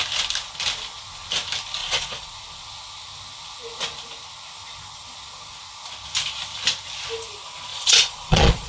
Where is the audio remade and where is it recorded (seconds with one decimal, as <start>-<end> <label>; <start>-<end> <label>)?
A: 0.0-1.8 recorded; 1.8-2.3 remade; 2.3-7.7 recorded; 7.7-8.7 remade